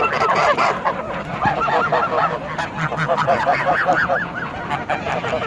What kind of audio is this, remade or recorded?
recorded